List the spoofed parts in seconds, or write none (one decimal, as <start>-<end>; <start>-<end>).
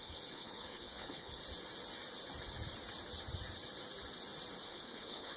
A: 0.0-1.4; 4.6-5.4